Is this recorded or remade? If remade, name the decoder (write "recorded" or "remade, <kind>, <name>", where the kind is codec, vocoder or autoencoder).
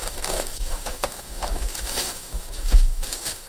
remade, codec, DAC